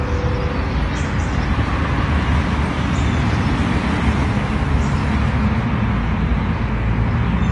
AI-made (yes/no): no